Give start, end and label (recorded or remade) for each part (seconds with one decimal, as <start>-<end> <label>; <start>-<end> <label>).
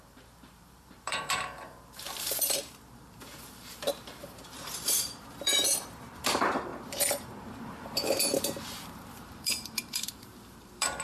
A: 0.0-11.0 remade